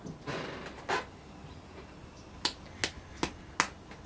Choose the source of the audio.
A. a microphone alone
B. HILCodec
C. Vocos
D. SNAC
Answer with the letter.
A